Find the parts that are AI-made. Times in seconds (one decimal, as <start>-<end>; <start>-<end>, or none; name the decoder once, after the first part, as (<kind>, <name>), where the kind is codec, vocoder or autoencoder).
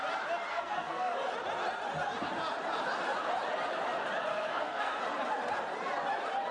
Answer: 0.5-1.1 (codec, SNAC); 4.3-5.0